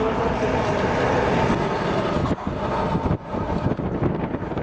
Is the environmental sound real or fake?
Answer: real